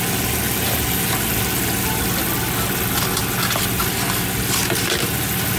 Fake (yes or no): no